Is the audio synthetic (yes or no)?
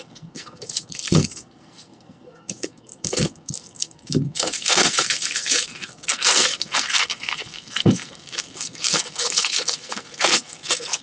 yes